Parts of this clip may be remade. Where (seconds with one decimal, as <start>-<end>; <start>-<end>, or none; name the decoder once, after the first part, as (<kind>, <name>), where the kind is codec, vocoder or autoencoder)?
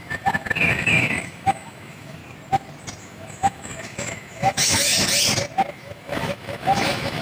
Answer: 0.0-2.2 (autoencoder, DAC-VAE); 3.0-4.9; 5.7-7.2